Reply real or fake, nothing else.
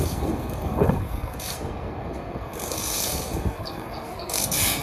fake